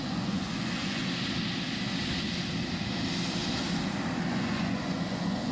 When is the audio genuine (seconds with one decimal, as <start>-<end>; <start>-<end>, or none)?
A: 1.0-4.3